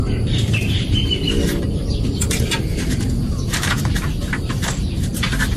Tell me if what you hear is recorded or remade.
remade